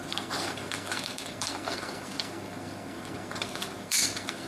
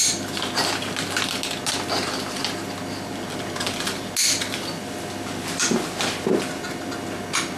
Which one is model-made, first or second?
first